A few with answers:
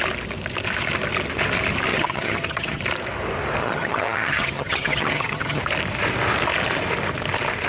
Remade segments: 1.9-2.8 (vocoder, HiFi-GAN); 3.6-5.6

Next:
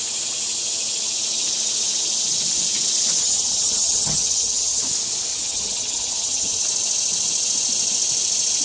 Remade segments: 3.2-4.8 (vocoder, HiFi-GAN); 5.3-6.6